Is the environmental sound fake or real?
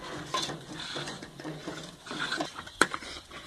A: fake